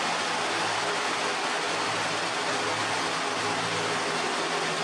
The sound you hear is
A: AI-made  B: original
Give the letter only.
B